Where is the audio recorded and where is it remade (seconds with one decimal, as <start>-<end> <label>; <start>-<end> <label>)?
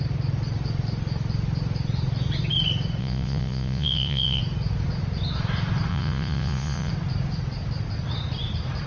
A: 0.0-3.0 recorded; 3.0-4.4 remade; 4.4-5.9 recorded; 5.9-6.9 remade; 6.9-8.9 recorded